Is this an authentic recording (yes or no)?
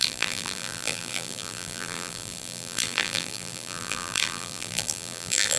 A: no